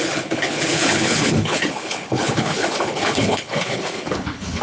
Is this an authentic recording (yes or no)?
no